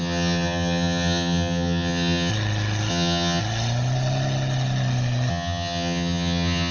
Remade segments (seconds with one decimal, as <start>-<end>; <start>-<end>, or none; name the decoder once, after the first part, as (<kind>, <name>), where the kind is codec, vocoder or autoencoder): 0.0-2.3 (vocoder, HiFi-GAN); 2.9-3.4; 5.3-6.7